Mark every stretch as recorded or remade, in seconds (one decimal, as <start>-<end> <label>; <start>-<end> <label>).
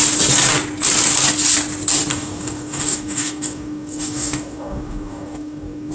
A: 0.0-2.1 recorded; 2.1-5.9 remade